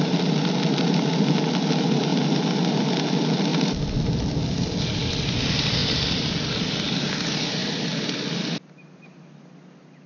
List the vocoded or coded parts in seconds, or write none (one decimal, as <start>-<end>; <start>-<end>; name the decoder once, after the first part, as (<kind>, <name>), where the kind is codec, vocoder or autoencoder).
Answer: none